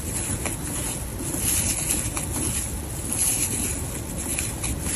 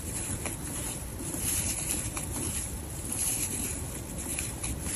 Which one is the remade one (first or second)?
second